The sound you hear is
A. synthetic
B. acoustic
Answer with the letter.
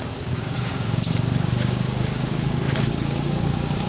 A